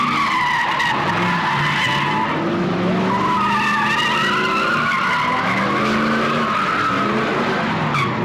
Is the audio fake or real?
real